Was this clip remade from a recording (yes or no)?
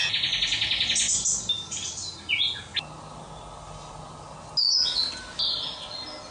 no